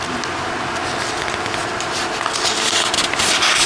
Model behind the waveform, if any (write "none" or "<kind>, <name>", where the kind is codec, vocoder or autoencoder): none